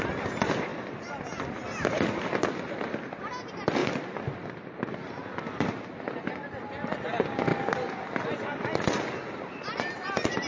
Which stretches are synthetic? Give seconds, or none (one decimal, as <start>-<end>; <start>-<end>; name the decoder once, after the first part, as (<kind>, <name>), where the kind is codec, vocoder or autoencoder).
none